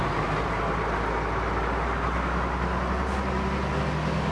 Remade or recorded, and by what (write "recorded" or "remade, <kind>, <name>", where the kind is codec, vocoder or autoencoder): recorded